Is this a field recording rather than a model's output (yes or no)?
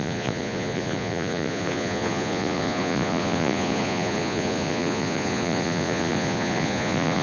no